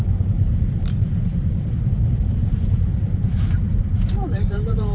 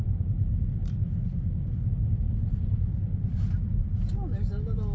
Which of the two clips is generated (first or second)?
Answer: first